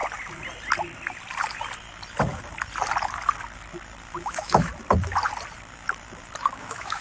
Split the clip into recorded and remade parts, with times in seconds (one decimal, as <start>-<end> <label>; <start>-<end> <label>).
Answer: 0.0-4.2 recorded; 4.2-4.7 remade; 4.7-6.5 recorded; 6.5-7.0 remade